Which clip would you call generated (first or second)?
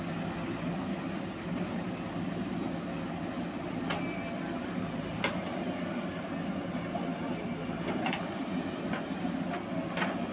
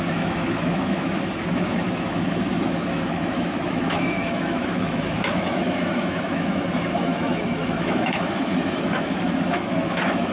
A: second